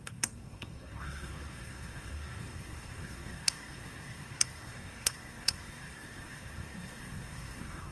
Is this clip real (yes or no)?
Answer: no